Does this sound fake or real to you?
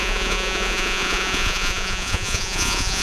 fake